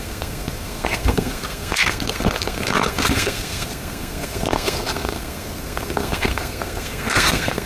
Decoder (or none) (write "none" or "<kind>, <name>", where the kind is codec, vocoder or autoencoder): codec, SNAC